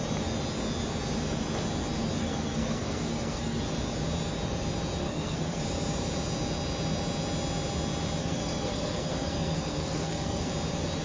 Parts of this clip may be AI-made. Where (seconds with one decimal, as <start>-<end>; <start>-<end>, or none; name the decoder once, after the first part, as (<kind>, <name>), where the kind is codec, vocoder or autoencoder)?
2.2-3.6 (codec, SNAC); 5.0-5.6; 8.2-10.5